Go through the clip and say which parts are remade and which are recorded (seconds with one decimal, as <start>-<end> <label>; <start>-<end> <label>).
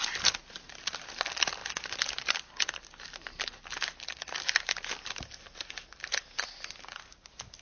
0.0-7.6 recorded